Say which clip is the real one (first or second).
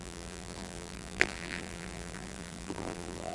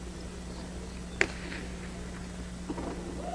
second